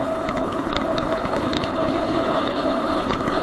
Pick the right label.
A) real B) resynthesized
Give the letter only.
B